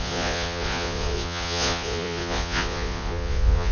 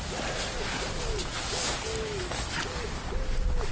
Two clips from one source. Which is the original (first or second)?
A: second